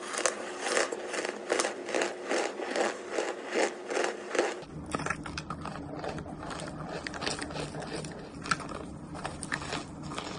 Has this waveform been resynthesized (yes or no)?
no